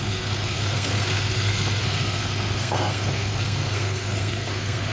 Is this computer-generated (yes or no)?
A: yes